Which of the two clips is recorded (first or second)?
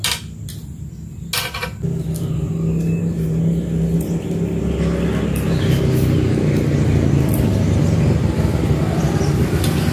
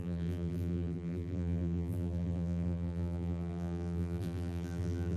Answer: first